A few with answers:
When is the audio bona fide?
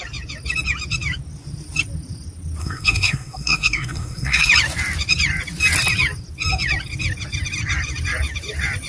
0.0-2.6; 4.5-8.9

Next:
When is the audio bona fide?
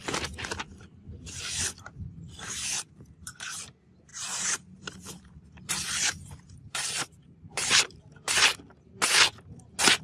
0.0-4.1; 8.0-10.0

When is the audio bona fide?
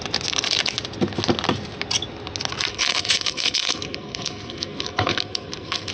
0.0-2.7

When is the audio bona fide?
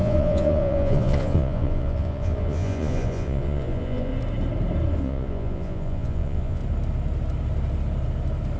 4.1-5.0; 6.6-8.6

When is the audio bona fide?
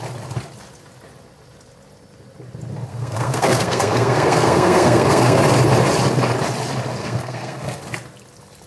0.0-2.9; 5.4-7.0; 7.8-8.7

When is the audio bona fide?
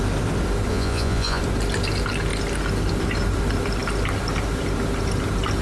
0.0-0.7; 1.4-5.6